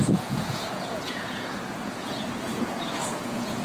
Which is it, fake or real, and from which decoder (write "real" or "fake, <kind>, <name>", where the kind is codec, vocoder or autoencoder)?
fake, vocoder, Vocos